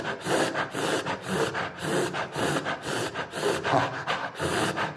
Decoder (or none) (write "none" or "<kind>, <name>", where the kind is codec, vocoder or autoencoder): none